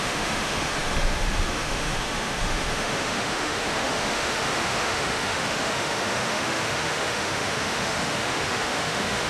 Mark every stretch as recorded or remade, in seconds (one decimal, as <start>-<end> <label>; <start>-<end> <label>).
0.0-9.3 remade